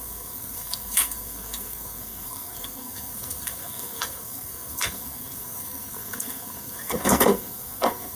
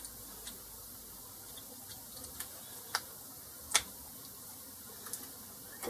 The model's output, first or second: first